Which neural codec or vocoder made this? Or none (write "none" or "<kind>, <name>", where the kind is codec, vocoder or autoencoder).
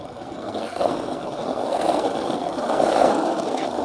codec, SNAC